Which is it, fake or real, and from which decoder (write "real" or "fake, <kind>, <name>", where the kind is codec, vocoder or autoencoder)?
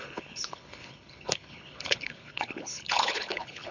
fake, codec, HILCodec